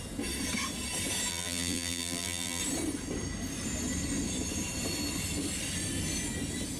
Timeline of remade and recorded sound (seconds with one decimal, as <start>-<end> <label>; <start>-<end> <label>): 0.0-1.3 recorded; 1.3-2.6 remade; 2.6-6.8 recorded